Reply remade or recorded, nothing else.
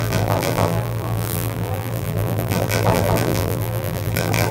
remade